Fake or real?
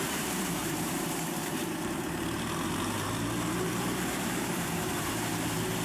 fake